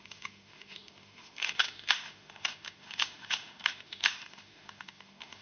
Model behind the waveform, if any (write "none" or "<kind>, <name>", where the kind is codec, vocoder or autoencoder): autoencoder, DAC-VAE